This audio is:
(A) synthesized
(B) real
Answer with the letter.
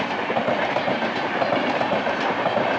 A